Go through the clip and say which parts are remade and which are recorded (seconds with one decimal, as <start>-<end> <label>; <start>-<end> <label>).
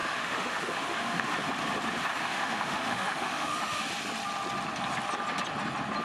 0.0-1.3 remade; 1.3-2.1 recorded; 2.1-3.9 remade; 3.9-6.0 recorded